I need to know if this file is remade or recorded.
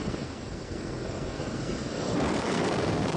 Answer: remade